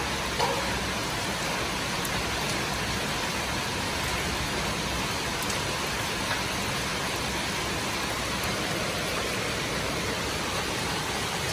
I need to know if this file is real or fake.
real